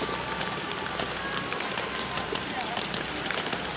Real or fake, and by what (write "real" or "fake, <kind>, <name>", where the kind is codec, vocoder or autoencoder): real